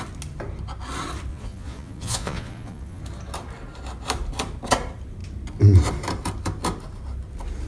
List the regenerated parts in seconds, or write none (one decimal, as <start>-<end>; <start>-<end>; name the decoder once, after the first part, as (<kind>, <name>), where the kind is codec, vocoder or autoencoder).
1.3-3.0 (vocoder, Vocos)